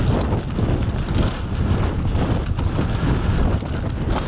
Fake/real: real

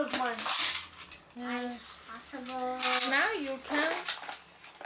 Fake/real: real